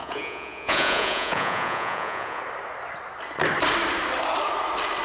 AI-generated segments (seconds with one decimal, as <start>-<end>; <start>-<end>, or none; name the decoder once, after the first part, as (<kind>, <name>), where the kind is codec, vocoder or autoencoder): 0.0-2.4 (vocoder, Vocos)